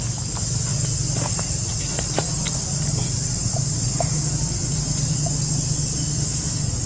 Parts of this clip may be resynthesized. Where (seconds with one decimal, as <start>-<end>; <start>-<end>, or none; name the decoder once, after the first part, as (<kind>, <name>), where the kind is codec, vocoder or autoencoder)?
none